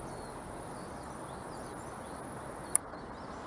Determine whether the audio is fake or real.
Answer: real